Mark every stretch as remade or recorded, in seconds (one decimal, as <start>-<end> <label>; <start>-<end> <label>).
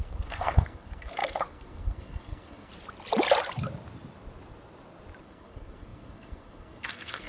0.0-2.7 remade; 2.7-5.2 recorded; 5.2-7.3 remade